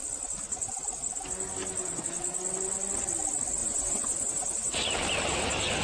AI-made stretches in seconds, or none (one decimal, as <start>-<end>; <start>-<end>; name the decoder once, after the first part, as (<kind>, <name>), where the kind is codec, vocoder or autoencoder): 3.6-4.8 (vocoder, BigVGAN v2)